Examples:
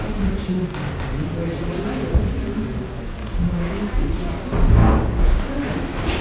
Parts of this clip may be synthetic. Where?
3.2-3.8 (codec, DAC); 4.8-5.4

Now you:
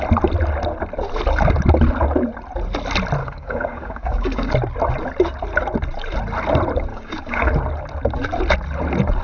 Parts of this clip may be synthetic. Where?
3.2-4.5 (codec, DAC); 6.9-7.5

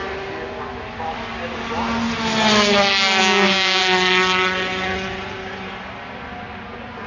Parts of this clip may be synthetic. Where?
3.2-3.8 (codec, DAC)

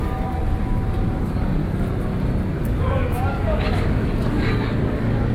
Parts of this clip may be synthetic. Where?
0.0-0.4 (codec, DAC); 1.2-1.6; 2.6-5.3

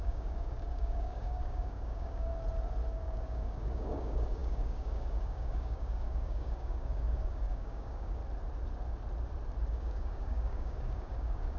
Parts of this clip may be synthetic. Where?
0.0-2.3 (codec, DAC); 2.9-8.2; 9.7-11.6

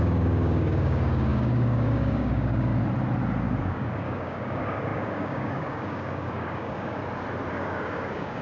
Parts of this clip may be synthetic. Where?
0.0-2.7 (codec, DAC); 3.6-7.0; 7.5-8.4